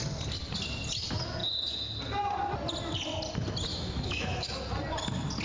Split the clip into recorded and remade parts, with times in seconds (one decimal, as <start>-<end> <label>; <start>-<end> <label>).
0.0-3.7 recorded; 3.7-4.6 remade; 4.6-5.4 recorded

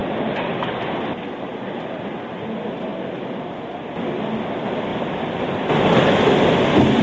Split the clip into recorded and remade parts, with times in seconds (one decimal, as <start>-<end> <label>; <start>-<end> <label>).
0.0-0.5 remade; 0.5-4.9 recorded; 4.9-5.7 remade; 5.7-7.0 recorded

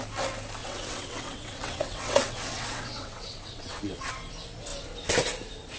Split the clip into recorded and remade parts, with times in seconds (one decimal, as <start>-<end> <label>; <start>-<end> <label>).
0.0-0.6 recorded; 0.6-4.1 remade; 4.1-5.8 recorded

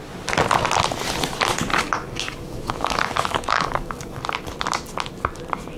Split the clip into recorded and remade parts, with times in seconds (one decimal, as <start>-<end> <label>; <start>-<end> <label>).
0.0-1.7 recorded; 1.7-4.2 remade; 4.2-5.8 recorded

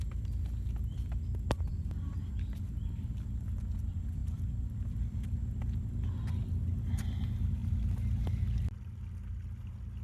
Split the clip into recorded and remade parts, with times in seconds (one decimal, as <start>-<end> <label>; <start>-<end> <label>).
0.0-10.0 recorded

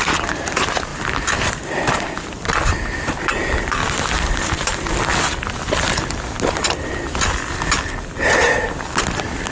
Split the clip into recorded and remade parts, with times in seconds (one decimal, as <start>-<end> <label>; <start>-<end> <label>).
0.0-9.5 recorded

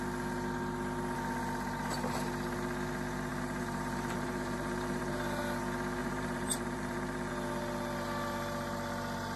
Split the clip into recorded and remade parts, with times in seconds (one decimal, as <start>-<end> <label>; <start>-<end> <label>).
0.0-3.3 recorded; 3.3-5.4 remade; 5.4-6.0 recorded; 6.0-7.3 remade; 7.3-9.4 recorded